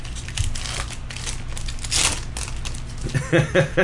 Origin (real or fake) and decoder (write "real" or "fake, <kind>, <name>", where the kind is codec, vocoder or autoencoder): real